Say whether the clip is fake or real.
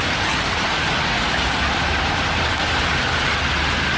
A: real